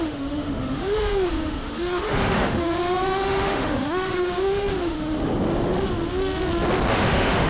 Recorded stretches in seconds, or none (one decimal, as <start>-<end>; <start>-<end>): 5.3-6.9